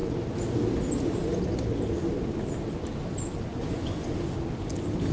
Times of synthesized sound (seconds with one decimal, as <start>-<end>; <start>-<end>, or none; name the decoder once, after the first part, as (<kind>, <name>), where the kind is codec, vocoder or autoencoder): 3.5-4.0 (vocoder, Vocos)